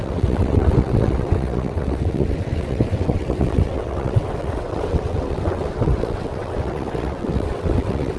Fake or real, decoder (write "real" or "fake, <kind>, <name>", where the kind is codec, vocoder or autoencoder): fake, vocoder, WaveNeXt